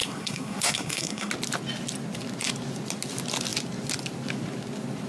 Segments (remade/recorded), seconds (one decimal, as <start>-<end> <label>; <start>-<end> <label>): 0.0-1.3 remade; 1.3-5.1 recorded

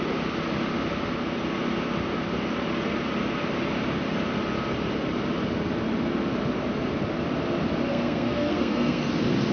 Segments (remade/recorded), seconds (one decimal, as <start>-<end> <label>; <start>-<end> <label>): 0.0-7.9 recorded; 7.9-9.1 remade; 9.1-9.5 recorded

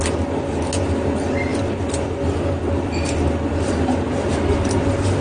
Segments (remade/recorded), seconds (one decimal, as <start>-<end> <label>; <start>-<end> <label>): 0.0-5.2 recorded

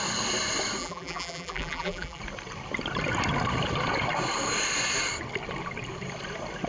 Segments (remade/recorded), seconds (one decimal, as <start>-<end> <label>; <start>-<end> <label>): 0.0-0.8 recorded; 0.8-2.2 remade; 2.2-6.7 recorded